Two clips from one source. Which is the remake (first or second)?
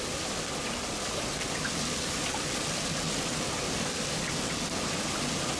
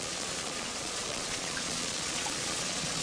second